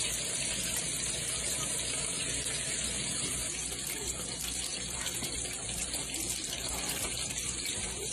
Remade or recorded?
remade